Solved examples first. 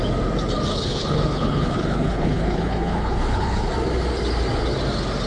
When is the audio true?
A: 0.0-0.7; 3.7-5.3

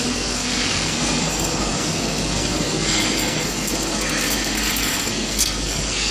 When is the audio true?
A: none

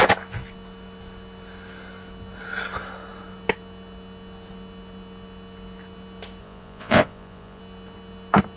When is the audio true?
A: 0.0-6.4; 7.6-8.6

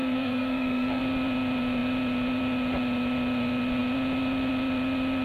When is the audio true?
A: 1.0-5.2

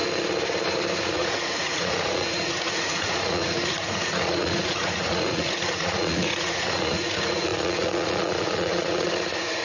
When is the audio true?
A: 0.0-1.0